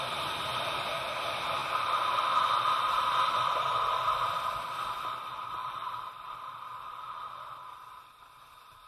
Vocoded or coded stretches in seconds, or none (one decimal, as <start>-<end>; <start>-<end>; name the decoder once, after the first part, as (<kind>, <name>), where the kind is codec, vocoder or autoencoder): 3.7-4.7 (vocoder, BigVGAN v2); 5.6-7.1